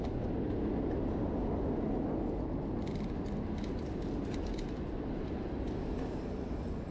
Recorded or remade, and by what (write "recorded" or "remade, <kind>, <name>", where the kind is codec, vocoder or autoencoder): recorded